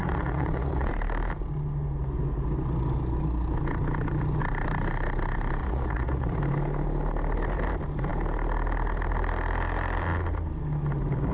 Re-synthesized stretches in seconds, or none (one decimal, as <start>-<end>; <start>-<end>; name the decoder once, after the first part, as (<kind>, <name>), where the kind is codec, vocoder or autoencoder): 0.0-0.9 (vocoder, Vocos); 5.6-6.4